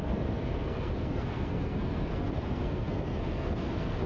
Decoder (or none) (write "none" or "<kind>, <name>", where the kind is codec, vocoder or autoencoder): codec, SNAC